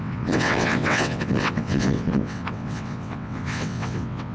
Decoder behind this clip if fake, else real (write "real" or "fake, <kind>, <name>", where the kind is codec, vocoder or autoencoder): fake, vocoder, WaveNeXt